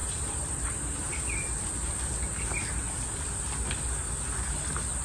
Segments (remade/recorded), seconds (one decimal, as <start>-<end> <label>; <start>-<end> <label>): 0.0-5.0 recorded